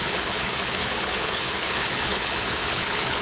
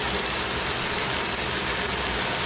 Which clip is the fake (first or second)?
first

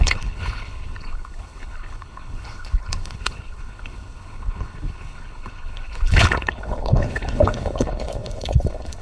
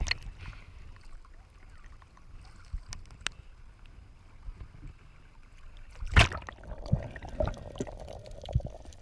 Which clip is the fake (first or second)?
first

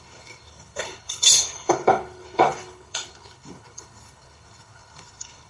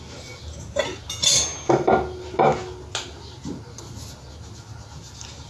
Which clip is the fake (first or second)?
first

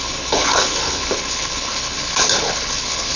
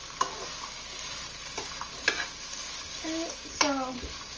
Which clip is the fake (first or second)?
first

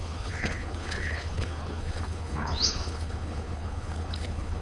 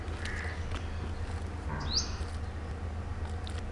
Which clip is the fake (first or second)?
first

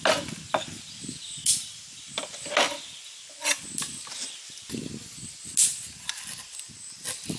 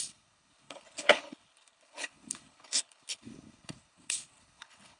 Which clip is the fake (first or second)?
second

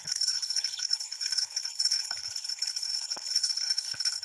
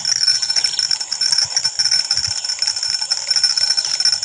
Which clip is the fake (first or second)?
first